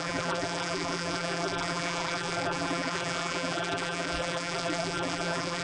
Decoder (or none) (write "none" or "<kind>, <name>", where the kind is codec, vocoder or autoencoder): vocoder, BigVGAN v2